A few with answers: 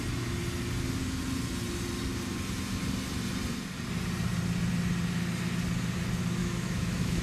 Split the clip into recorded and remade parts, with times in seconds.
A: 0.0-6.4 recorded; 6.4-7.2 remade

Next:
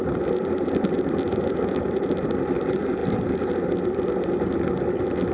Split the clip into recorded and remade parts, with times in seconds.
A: 0.0-5.3 recorded

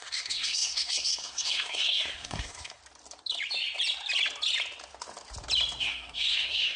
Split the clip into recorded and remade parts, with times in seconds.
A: 0.0-2.8 remade; 2.8-5.8 recorded; 5.8-6.8 remade

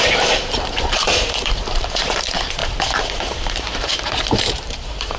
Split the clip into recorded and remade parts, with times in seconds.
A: 0.0-5.2 remade

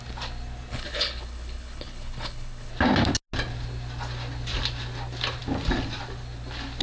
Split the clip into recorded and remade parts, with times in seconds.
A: 0.0-0.7 recorded; 0.7-2.7 remade; 2.7-6.8 recorded

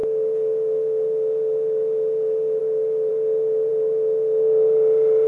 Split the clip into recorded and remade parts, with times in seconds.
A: 0.0-5.3 recorded